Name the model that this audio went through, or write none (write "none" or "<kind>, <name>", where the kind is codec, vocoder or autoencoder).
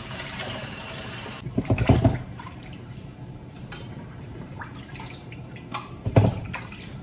vocoder, BigVGAN v2